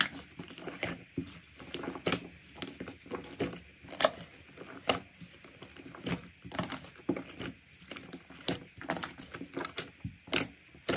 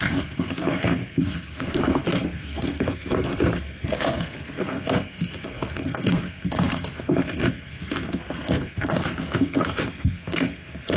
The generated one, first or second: second